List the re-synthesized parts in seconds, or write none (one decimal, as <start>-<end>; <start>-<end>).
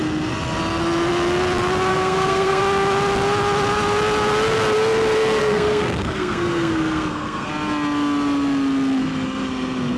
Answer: 1.9-2.6; 5.4-7.5